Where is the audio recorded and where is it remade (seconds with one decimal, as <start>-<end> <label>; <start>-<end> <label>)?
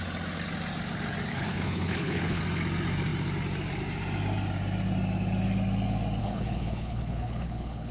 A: 0.0-1.3 recorded; 1.3-2.4 remade; 2.4-6.2 recorded; 6.2-7.9 remade